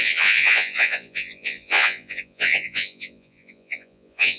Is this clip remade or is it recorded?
remade